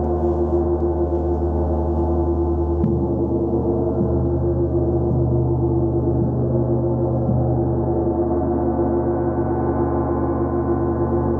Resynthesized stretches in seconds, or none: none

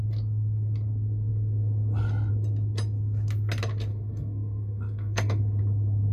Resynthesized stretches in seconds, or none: 3.9-5.4 (codec, SNAC)

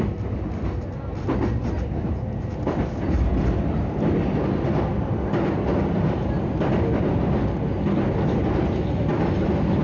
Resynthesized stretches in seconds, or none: none

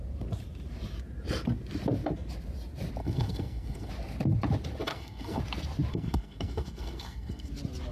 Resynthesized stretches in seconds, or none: 3.0-3.9 (codec, SNAC); 4.9-5.4; 5.9-7.5

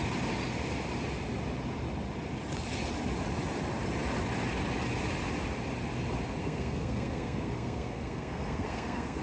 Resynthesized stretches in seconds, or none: 6.4-9.2 (codec, SNAC)

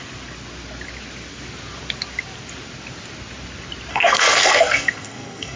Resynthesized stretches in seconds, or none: 3.9-5.6 (codec, SNAC)

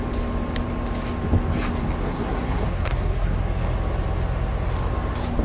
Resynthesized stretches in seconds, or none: 2.0-3.4 (codec, SNAC)

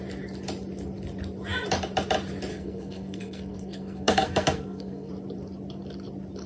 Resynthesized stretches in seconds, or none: 2.5-5.1 (codec, SNAC)